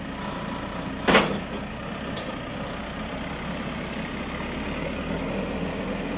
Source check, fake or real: real